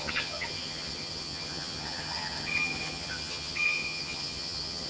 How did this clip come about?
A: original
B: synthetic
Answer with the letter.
B